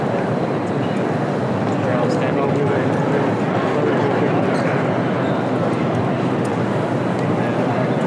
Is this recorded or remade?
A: recorded